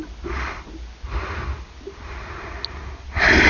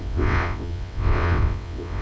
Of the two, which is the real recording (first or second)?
first